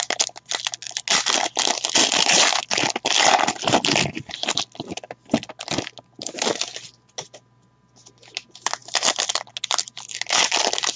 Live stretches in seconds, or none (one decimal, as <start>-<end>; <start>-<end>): 0.0-11.0